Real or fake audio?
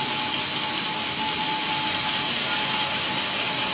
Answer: real